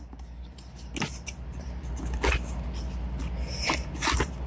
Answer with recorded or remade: recorded